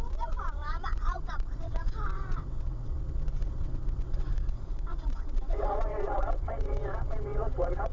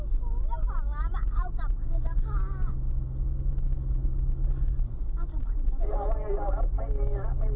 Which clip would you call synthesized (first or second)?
first